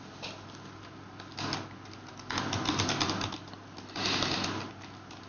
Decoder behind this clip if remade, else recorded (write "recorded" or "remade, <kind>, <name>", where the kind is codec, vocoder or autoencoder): recorded